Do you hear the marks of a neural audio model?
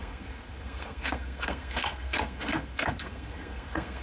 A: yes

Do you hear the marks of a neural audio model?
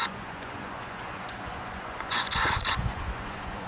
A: yes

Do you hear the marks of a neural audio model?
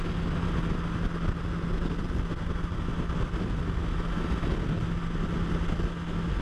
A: no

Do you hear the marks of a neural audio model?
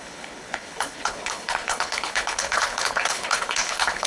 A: yes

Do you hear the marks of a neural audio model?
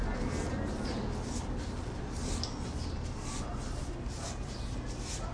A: no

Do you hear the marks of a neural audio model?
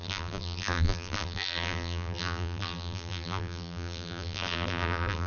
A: yes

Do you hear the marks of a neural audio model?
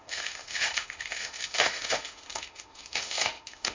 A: yes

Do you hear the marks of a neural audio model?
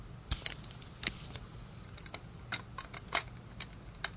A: no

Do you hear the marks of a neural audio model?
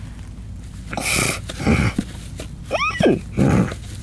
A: no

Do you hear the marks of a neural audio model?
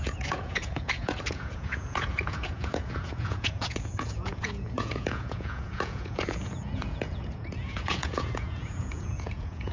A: yes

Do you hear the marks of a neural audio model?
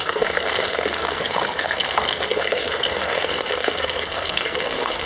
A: yes